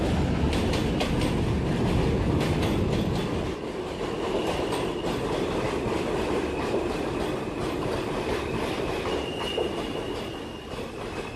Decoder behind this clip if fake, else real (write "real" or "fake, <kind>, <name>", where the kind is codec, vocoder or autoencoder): real